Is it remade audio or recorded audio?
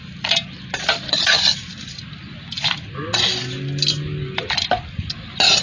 recorded